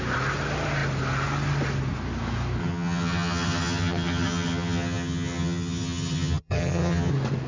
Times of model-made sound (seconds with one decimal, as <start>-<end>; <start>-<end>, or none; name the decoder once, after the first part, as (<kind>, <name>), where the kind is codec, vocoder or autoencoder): 2.6-7.1 (vocoder, HiFi-GAN)